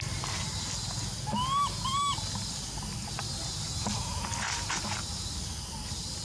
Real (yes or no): yes